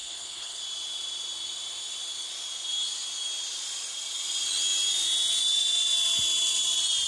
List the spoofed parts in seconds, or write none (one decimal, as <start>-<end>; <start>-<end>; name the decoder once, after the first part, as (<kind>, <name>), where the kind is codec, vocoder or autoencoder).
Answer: 0.0-0.6 (codec, HILCodec)